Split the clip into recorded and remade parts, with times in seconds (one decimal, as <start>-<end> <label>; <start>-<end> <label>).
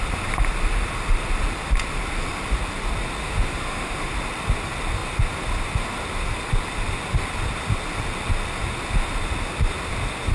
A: 0.0-3.2 recorded; 3.2-4.1 remade; 4.1-10.3 recorded